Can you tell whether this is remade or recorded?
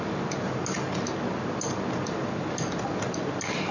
recorded